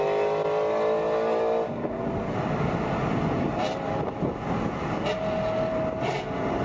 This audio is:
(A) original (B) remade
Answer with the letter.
A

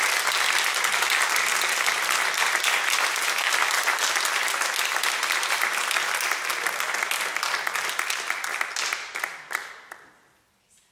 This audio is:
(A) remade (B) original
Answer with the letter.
B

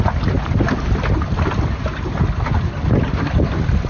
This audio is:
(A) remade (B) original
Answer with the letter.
B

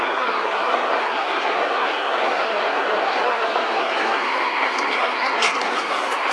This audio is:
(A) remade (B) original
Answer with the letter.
A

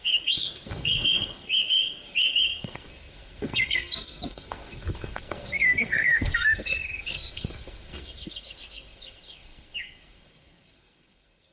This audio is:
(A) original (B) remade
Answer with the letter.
B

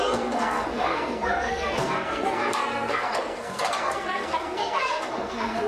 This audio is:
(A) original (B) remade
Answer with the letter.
B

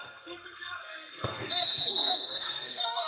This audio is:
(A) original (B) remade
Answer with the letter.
B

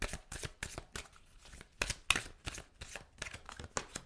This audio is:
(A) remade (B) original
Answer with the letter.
B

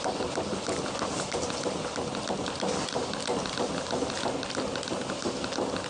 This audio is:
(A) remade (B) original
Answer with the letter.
B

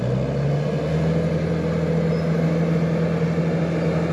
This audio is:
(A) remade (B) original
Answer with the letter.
B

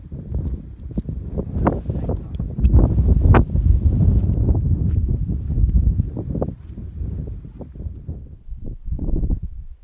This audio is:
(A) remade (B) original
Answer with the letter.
B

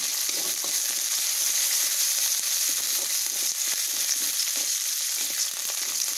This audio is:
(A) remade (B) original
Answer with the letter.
B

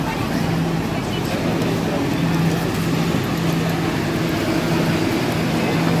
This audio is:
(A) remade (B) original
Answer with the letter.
B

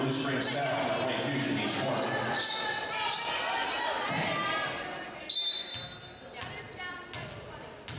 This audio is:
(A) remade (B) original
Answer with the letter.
B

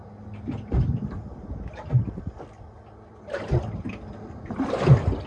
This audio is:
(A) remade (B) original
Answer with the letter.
B